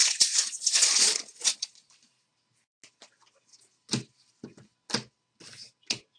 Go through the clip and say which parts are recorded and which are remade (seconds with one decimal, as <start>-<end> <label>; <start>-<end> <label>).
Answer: 0.0-2.3 remade; 2.3-6.2 recorded